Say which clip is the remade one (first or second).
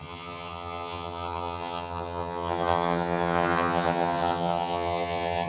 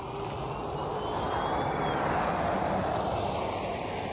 first